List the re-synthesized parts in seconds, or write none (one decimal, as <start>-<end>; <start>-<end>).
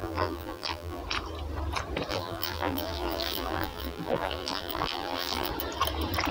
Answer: 0.0-1.0; 2.1-5.5